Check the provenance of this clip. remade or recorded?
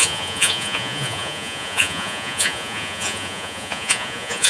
remade